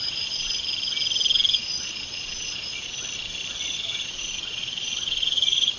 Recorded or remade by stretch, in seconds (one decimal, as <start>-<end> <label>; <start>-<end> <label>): 0.0-0.5 remade; 0.5-1.5 recorded; 1.5-3.0 remade; 3.0-3.7 recorded; 3.7-5.8 remade